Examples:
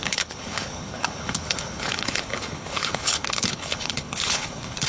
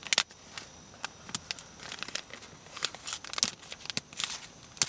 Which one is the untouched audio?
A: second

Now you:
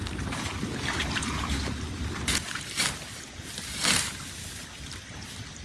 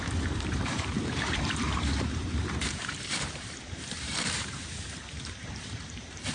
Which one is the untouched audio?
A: first